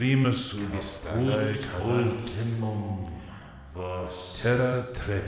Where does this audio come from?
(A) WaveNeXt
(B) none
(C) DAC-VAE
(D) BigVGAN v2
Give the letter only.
B